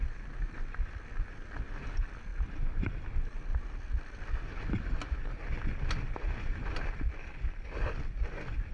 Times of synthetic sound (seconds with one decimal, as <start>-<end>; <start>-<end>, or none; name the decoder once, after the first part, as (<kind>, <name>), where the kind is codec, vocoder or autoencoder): none